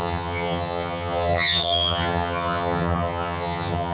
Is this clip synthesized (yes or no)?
yes